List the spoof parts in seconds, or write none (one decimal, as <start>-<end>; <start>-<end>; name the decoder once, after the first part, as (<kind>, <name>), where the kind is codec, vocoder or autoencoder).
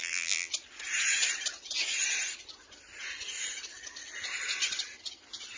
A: 0.0-0.5 (vocoder, BigVGAN v2)